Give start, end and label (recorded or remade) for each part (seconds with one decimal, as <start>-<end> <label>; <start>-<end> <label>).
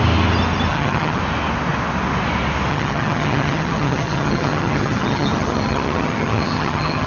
0.0-0.7 recorded; 0.7-1.2 remade; 1.2-2.7 recorded; 2.7-7.1 remade